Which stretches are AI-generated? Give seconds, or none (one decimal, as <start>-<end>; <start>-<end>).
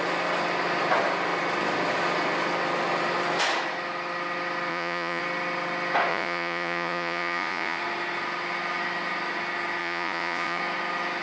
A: 4.7-5.2; 6.1-7.8; 9.8-10.6